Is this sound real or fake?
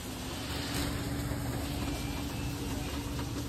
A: real